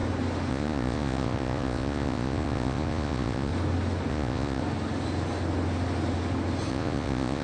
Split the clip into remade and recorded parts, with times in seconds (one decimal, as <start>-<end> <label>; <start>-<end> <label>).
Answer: 0.0-0.5 recorded; 0.5-3.5 remade; 3.5-4.1 recorded; 4.1-4.6 remade; 4.6-6.7 recorded; 6.7-7.4 remade